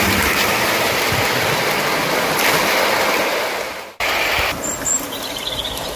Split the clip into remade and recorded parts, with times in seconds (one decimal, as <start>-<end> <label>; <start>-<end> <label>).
0.0-3.3 recorded; 3.3-4.3 remade; 4.3-6.0 recorded